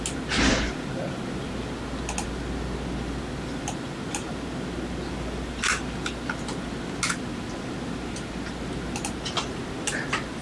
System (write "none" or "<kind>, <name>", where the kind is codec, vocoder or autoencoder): none